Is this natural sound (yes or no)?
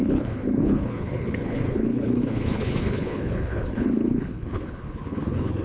no